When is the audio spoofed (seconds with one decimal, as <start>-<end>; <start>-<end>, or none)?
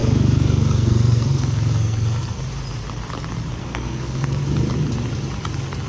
0.0-2.4; 3.6-4.4